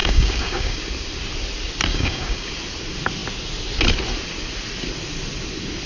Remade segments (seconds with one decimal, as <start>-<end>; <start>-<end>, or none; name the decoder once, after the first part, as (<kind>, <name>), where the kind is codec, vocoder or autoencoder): 0.0-0.8 (codec, DAC); 1.9-2.5